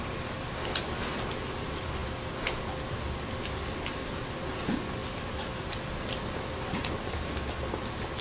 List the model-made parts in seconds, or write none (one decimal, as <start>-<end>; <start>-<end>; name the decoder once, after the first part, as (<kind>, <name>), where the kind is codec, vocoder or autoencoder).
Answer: none